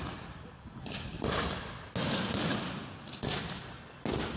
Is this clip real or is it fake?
real